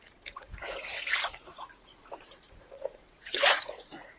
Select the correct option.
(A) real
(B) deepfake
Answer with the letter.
B